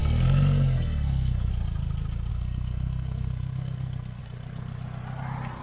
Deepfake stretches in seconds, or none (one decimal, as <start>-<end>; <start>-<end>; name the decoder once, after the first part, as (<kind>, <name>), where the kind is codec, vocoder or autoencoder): 0.0-1.5 (codec, SNAC); 2.3-4.2